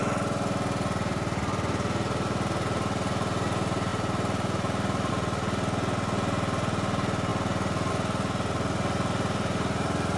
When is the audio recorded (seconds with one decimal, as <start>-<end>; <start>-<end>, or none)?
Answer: 0.0-10.2